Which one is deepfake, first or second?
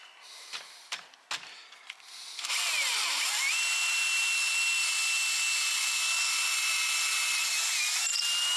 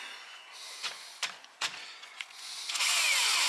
second